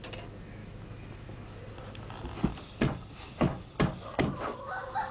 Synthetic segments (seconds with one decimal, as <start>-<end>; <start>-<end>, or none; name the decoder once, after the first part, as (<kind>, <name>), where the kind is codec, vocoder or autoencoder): 0.6-1.6 (autoencoder, DAC-VAE)